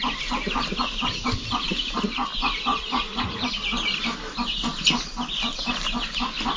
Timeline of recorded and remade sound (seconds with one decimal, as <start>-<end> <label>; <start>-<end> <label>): 0.0-2.7 recorded; 2.7-3.5 remade; 3.5-6.6 recorded